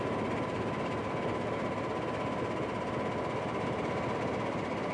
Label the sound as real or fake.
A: real